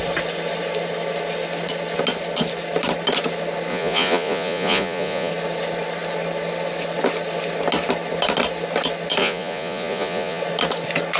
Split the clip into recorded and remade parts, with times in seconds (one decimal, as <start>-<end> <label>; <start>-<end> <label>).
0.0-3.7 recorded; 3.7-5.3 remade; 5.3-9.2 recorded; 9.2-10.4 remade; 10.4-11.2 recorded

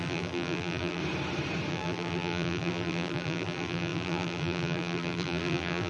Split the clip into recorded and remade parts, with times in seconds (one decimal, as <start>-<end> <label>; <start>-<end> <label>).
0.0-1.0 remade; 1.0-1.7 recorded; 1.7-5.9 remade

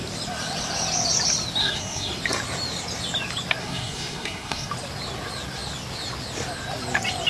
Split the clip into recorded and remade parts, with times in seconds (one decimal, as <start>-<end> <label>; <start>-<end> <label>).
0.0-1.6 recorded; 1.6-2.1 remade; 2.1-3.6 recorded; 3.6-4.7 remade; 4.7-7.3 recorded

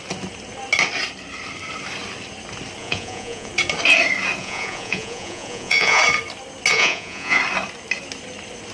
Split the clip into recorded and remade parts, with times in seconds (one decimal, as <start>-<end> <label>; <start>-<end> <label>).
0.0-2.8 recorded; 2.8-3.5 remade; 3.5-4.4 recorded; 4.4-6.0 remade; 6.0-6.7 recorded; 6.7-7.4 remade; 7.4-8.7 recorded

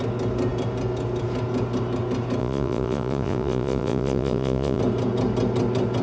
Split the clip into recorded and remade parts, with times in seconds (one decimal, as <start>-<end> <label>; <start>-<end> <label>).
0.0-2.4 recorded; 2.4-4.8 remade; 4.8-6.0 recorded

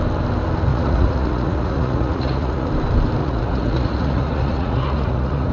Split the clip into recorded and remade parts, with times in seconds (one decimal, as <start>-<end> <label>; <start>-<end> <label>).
0.0-0.7 recorded; 0.7-2.7 remade; 2.7-3.2 recorded; 3.2-5.5 remade

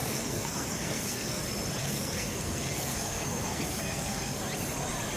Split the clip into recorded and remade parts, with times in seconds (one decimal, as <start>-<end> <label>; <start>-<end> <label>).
0.0-1.4 remade; 1.4-1.8 recorded; 1.8-4.4 remade; 4.4-5.2 recorded